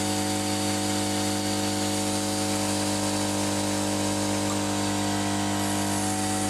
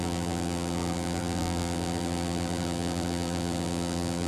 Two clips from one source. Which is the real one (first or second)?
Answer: first